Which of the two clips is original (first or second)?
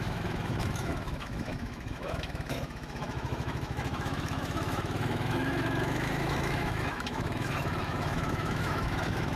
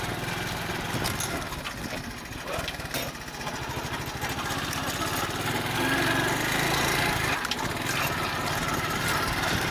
second